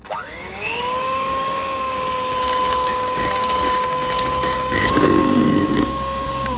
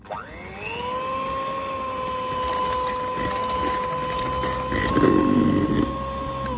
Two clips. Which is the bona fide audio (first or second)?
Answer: second